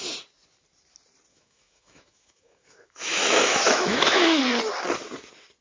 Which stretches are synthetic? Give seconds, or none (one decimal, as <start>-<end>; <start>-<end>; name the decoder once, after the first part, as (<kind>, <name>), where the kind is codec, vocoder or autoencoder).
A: 1.3-4.4 (autoencoder, DAC-VAE)